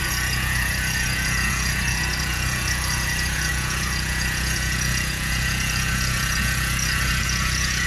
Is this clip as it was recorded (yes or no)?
no